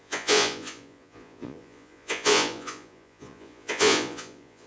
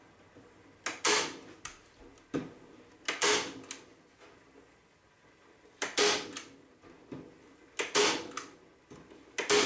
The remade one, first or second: first